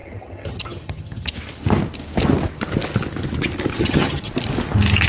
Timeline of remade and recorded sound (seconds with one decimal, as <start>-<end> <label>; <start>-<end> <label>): 0.0-1.3 remade; 1.3-3.7 recorded; 3.7-4.3 remade; 4.3-5.1 recorded